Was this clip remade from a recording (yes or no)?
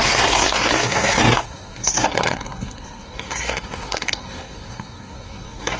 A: yes